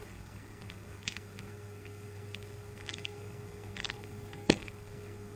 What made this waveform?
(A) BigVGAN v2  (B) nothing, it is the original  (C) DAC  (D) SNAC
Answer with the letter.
D